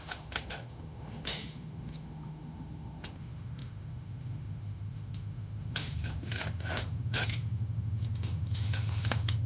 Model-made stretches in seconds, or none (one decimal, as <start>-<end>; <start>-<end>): 0.0-9.5